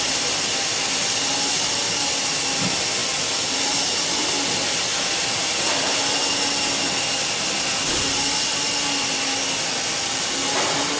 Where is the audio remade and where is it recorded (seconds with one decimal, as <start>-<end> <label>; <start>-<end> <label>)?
0.0-11.0 recorded